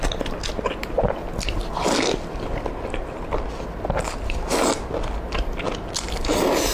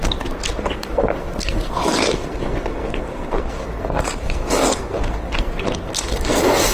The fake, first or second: second